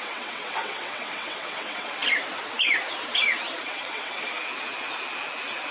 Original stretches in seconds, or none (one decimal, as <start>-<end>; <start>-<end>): 2.0-3.6; 4.5-5.7